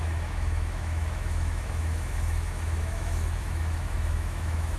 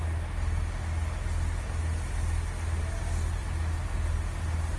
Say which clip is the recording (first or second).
second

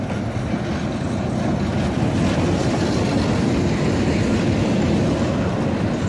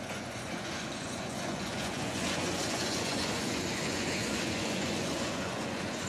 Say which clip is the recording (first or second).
first